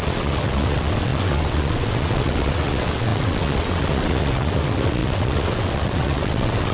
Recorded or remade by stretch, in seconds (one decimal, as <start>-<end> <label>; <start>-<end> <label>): 0.0-6.7 remade